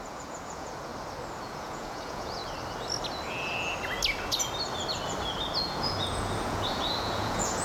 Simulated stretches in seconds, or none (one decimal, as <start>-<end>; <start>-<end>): 0.0-0.9; 1.4-2.4; 5.6-7.6